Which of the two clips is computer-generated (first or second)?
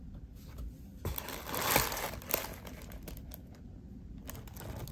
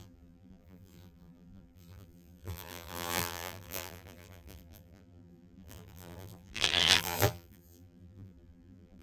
second